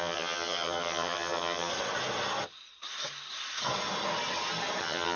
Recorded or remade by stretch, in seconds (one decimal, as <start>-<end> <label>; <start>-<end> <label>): 0.0-1.7 remade; 1.7-4.8 recorded; 4.8-5.2 remade